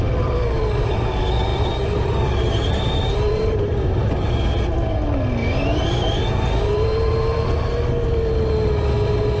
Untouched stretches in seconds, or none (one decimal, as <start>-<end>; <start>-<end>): 0.0-1.5; 4.4-5.4; 7.6-9.4

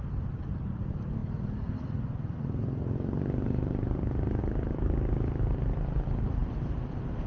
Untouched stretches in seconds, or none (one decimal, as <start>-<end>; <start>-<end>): none